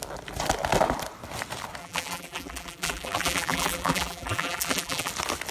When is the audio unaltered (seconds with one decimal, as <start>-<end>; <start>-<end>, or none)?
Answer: 0.0-1.8; 5.1-5.5